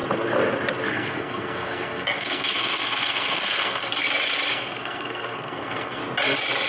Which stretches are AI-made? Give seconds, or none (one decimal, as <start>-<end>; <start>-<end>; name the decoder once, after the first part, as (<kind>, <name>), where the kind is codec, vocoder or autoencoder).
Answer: 0.9-3.8 (codec, SNAC); 4.5-6.0